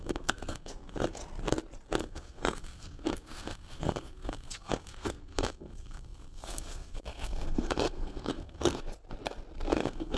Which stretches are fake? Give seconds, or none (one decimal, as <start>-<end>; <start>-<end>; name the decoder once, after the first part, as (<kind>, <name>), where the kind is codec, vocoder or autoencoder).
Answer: 0.0-1.2 (codec, SNAC); 2.0-8.8; 9.7-10.2